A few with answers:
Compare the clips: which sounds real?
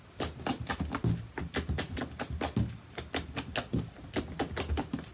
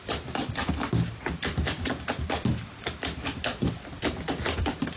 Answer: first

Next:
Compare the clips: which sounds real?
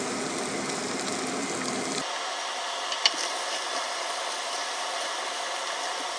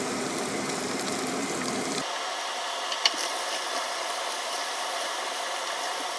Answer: first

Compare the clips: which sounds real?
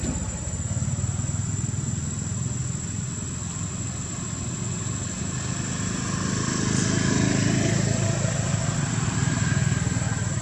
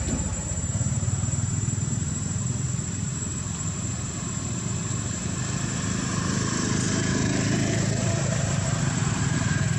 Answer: first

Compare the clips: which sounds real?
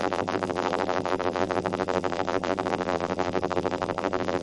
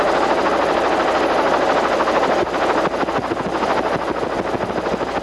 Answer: second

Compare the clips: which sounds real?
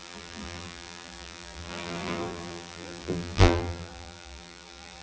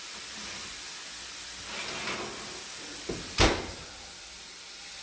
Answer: second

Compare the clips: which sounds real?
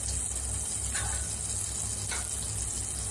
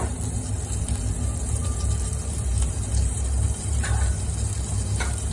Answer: first